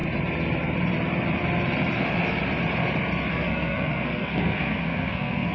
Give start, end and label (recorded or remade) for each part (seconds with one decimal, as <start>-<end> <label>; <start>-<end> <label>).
0.0-3.3 recorded; 3.3-5.5 remade